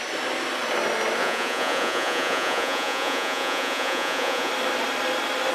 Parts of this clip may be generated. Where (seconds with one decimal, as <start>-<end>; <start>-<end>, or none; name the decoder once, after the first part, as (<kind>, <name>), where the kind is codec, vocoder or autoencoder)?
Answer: 1.2-4.5 (vocoder, Vocos)